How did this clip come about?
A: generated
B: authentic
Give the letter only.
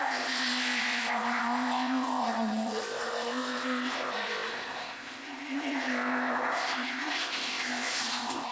A